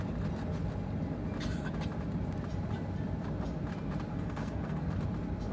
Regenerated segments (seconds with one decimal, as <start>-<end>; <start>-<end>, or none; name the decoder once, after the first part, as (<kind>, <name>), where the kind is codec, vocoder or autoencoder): 4.1-4.9 (codec, SNAC)